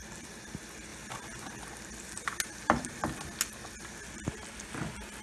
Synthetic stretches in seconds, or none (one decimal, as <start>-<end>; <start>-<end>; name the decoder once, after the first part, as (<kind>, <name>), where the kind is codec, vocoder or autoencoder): none

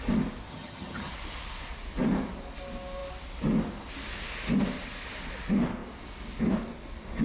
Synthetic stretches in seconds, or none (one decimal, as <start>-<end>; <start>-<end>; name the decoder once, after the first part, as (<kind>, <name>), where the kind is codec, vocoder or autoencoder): 0.5-1.1 (vocoder, HiFi-GAN)

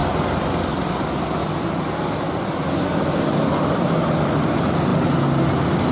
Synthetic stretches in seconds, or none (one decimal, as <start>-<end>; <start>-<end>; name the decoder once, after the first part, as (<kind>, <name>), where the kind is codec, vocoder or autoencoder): none

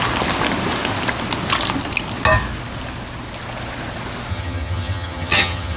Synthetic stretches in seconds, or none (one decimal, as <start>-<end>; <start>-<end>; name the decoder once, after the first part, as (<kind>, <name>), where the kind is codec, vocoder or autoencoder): 4.3-5.8 (vocoder, HiFi-GAN)